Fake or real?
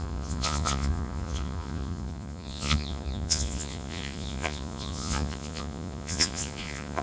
fake